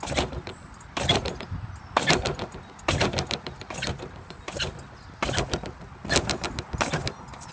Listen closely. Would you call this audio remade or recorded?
recorded